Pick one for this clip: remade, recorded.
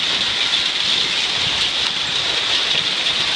recorded